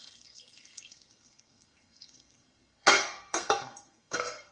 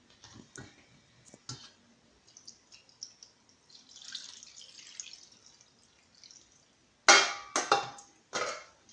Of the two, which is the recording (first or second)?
second